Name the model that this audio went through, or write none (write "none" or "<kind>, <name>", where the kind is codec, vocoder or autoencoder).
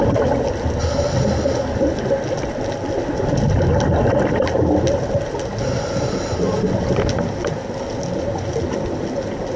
none